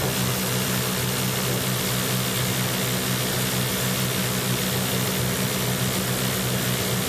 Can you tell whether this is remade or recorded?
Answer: recorded